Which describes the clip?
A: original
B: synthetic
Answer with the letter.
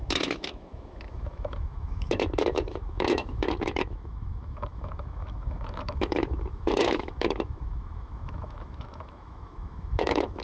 B